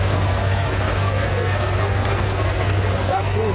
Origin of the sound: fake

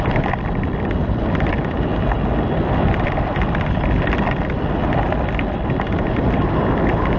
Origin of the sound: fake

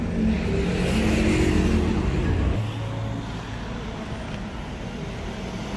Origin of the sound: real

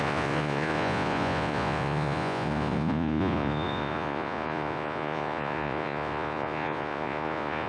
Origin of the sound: fake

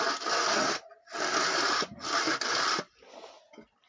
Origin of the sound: real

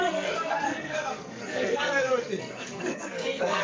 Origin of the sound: fake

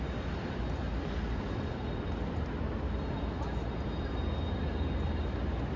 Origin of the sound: real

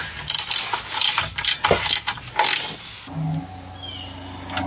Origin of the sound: real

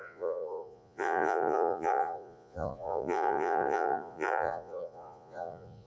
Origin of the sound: fake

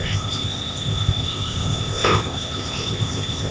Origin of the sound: fake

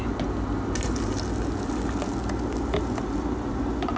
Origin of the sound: real